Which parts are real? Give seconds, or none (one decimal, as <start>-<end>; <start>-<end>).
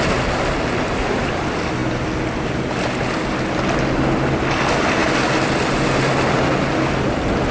0.0-7.5